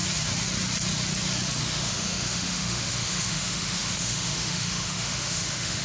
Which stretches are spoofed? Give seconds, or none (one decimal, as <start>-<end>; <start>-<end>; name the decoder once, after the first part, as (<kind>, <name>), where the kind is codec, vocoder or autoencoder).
1.6-5.8 (autoencoder, DAC-VAE)